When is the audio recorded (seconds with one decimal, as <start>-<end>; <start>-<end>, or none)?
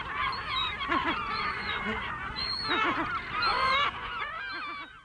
0.0-0.6; 2.6-3.5; 4.4-5.0